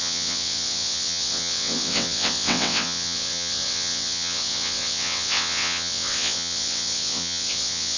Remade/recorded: remade